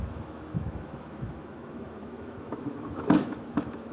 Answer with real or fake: fake